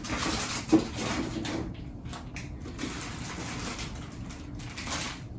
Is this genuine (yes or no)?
yes